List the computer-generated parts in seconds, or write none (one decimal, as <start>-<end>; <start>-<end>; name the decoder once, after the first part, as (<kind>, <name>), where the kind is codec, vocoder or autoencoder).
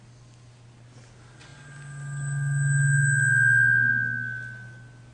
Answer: none